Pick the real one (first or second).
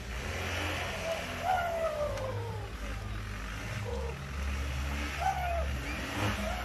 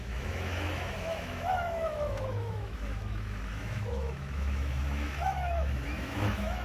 first